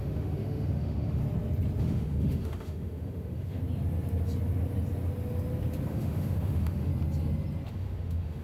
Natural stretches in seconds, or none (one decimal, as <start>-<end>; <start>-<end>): 1.2-1.8; 3.6-5.9; 6.9-7.7

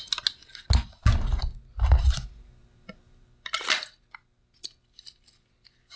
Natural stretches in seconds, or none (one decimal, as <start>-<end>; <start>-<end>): 0.0-6.0